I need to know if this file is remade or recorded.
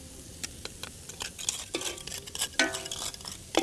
recorded